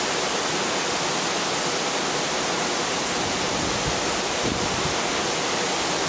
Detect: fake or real real